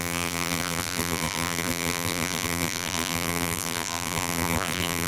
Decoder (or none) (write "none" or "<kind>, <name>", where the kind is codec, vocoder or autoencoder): vocoder, BigVGAN v2